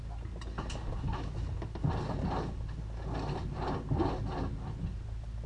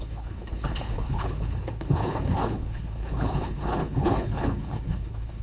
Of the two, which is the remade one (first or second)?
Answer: second